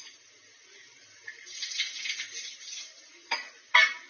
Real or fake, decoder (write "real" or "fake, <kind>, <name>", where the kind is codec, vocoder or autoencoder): real